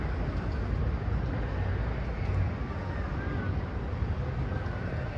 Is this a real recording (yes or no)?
yes